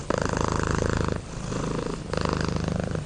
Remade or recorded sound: recorded